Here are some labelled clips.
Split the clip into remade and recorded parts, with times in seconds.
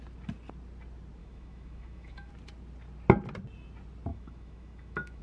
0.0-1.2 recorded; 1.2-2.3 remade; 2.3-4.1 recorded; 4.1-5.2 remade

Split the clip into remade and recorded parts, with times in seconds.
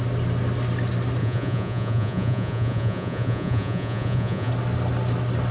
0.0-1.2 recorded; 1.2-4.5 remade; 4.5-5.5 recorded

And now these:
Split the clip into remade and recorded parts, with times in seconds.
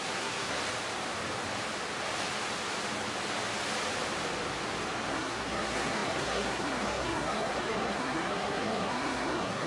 0.0-0.6 remade; 0.6-5.1 recorded; 5.1-9.7 remade